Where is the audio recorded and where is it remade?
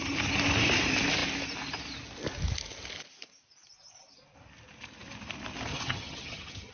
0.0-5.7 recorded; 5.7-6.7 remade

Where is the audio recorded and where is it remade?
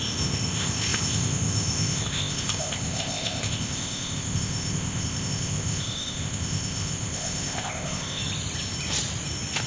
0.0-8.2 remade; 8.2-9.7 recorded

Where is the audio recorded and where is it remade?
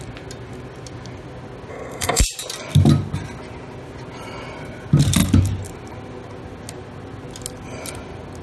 0.0-1.7 recorded; 1.7-2.2 remade; 2.2-8.4 recorded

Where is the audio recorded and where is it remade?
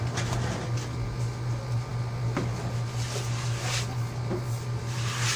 0.0-5.4 recorded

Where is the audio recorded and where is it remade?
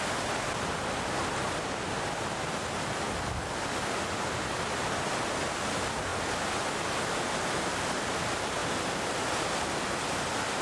0.0-10.6 recorded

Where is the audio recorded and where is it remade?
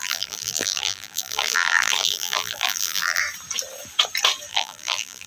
0.0-3.2 remade; 3.2-4.5 recorded; 4.5-5.3 remade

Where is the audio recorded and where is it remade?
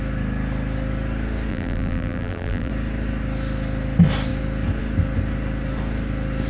0.0-1.5 recorded; 1.5-2.7 remade; 2.7-6.5 recorded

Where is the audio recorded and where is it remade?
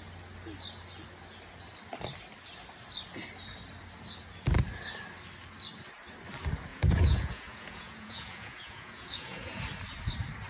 0.0-6.7 recorded; 6.7-9.6 remade; 9.6-10.5 recorded